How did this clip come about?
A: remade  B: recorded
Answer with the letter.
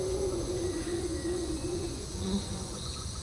A